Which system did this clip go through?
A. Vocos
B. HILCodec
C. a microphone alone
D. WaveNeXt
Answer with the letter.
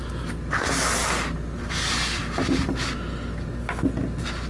C